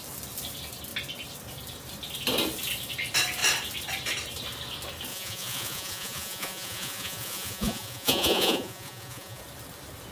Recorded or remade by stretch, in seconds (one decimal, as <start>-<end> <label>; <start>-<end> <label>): 0.0-5.1 recorded; 5.1-9.4 remade; 9.4-10.1 recorded